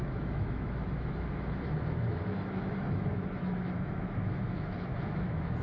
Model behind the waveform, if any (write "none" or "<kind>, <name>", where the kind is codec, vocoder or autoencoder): autoencoder, DAC-VAE